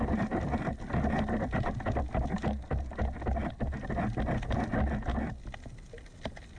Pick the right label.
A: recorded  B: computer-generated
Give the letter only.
A